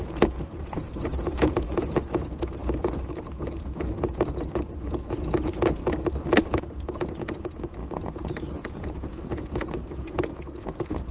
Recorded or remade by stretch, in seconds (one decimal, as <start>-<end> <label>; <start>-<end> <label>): 0.0-5.8 remade; 5.8-6.4 recorded; 6.4-11.1 remade